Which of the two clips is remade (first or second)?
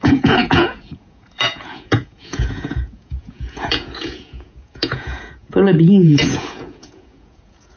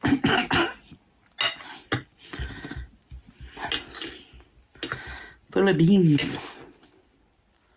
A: first